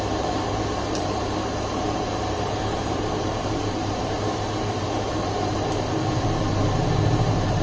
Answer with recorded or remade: remade